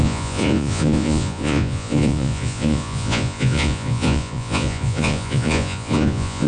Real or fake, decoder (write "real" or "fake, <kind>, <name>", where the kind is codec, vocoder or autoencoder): fake, vocoder, Vocos